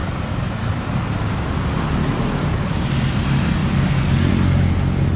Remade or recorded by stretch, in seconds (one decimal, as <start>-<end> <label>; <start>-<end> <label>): 0.0-5.2 recorded